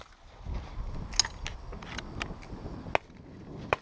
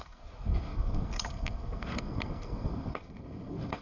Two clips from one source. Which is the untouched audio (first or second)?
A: first